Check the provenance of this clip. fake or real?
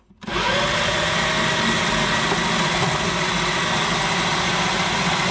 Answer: real